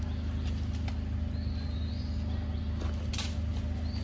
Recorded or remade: recorded